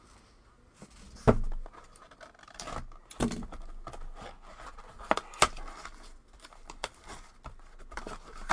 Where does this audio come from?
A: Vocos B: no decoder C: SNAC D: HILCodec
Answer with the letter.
B